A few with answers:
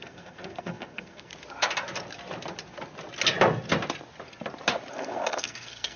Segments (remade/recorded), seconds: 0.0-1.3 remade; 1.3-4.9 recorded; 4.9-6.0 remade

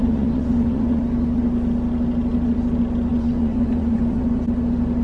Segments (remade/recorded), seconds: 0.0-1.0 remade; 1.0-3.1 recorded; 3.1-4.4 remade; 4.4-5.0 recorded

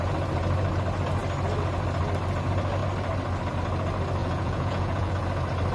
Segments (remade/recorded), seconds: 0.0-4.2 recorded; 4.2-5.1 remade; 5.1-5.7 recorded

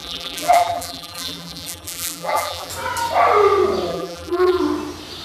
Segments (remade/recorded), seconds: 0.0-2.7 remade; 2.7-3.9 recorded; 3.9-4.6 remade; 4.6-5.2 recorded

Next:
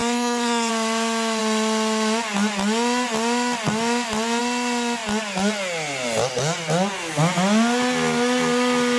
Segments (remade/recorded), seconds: 0.0-0.7 remade; 0.7-9.0 recorded

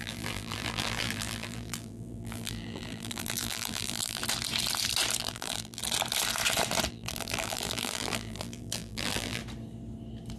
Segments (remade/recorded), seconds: 0.0-4.2 remade; 4.2-5.2 recorded; 5.2-5.8 remade; 5.8-6.9 recorded; 6.9-9.4 remade; 9.4-10.4 recorded